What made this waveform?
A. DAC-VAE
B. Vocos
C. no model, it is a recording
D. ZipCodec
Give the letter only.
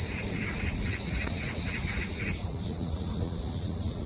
B